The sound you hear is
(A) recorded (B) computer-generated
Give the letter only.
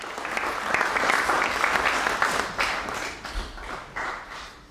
A